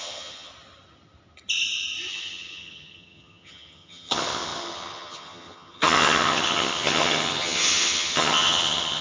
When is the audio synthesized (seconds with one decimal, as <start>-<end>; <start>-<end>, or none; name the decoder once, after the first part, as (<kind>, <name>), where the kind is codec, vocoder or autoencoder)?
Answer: 0.0-0.5 (vocoder, HiFi-GAN); 2.1-9.0